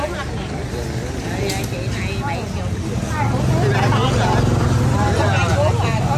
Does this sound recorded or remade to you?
recorded